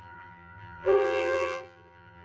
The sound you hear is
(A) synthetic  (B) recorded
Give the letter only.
A